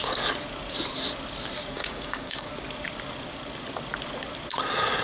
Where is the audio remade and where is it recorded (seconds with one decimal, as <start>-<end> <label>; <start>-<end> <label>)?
0.0-1.7 recorded; 1.7-2.5 remade; 2.5-5.0 recorded